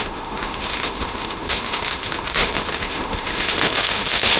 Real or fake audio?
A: fake